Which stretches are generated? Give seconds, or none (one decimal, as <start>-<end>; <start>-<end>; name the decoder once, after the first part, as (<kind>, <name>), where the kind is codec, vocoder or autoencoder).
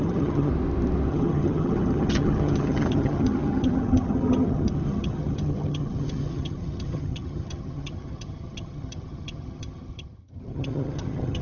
0.0-0.5 (vocoder, HiFi-GAN); 1.1-11.4